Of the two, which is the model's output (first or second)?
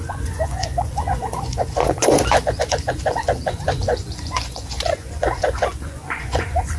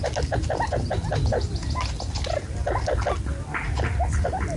first